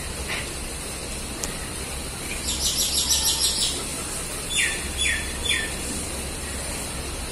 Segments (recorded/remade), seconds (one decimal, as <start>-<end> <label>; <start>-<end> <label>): 0.0-7.3 recorded